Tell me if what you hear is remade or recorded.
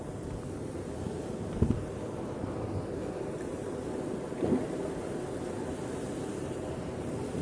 recorded